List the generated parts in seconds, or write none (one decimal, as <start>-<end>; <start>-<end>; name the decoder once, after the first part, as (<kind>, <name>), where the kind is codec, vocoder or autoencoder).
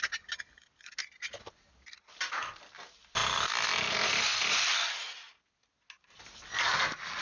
none